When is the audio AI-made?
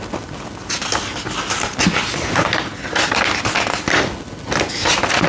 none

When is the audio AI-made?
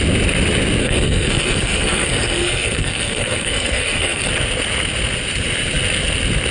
0.8-4.3 (codec, SNAC)